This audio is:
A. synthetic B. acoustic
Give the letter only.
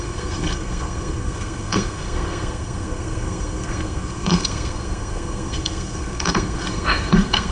A